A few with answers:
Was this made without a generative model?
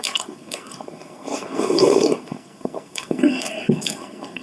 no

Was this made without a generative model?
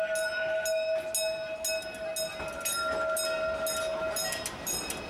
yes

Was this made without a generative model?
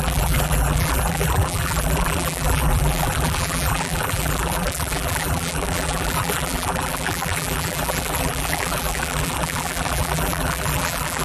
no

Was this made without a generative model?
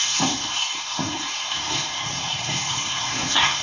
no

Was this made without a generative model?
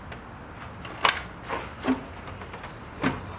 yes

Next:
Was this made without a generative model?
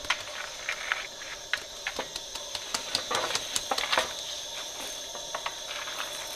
yes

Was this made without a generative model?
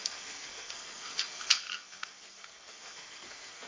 no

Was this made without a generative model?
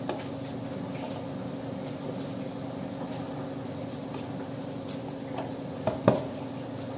yes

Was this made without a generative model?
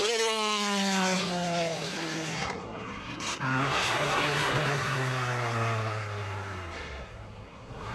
no